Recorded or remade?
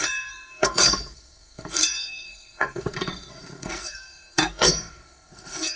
remade